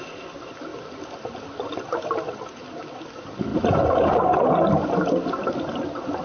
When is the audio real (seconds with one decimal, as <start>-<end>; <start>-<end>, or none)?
0.0-6.2